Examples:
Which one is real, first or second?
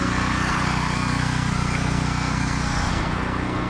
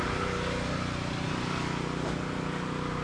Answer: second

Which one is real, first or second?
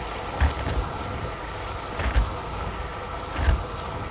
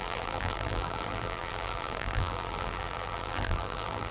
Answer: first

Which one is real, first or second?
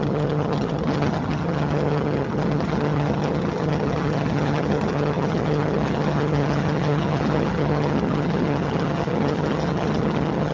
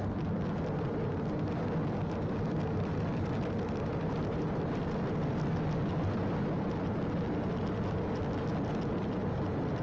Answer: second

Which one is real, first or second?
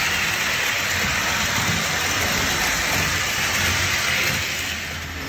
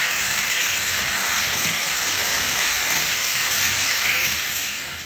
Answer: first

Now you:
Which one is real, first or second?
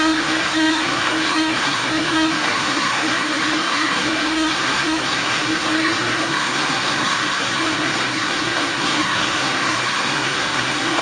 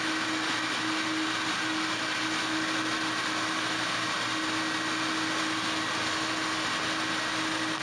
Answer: second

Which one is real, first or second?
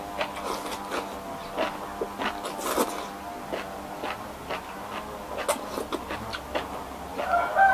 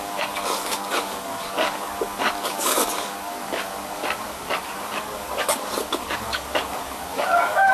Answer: first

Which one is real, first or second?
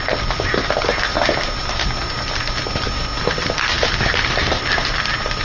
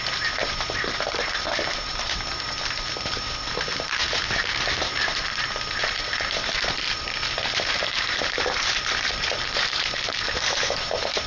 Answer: first